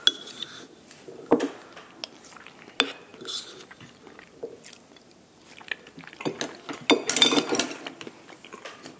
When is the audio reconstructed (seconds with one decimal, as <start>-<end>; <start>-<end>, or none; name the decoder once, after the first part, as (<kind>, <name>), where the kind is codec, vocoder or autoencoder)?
none